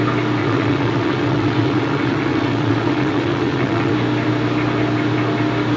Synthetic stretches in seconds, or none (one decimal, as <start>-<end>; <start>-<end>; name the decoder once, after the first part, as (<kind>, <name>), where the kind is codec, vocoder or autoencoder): 0.4-3.9 (vocoder, WaveNeXt)